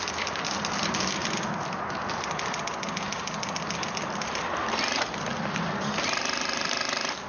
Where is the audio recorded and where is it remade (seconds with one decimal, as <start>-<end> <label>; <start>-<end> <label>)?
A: 0.0-7.3 recorded